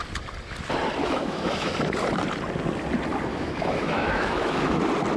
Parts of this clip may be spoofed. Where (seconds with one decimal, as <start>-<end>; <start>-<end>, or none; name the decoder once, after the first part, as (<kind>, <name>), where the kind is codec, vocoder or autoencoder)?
1.0-1.7 (autoencoder, DAC-VAE); 3.3-4.8